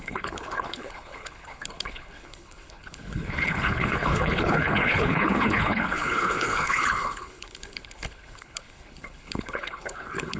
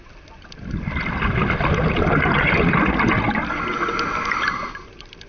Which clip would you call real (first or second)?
second